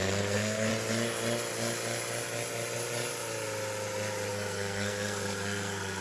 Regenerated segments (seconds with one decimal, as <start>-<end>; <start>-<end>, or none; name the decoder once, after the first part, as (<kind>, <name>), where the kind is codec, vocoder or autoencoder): 0.0-0.7 (codec, SNAC); 4.3-6.0